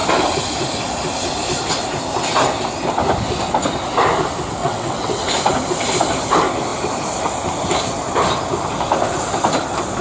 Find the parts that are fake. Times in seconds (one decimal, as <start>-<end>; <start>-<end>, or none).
4.6-5.3